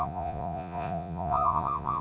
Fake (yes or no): yes